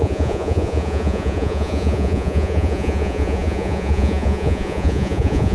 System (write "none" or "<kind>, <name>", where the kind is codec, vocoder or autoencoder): vocoder, Vocos